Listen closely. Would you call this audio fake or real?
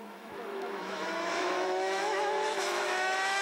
fake